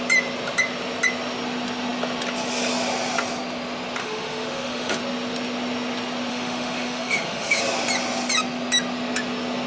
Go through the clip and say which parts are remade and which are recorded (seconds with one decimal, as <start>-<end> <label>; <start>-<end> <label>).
0.0-4.0 recorded; 4.0-5.0 remade; 5.0-6.3 recorded; 6.3-7.6 remade; 7.6-9.7 recorded